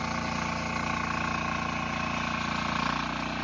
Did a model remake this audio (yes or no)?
no